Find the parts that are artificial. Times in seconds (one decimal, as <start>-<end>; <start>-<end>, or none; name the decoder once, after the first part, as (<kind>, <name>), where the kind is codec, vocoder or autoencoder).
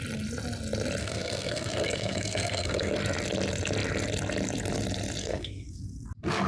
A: 1.0-2.9 (codec, SNAC); 5.2-6.1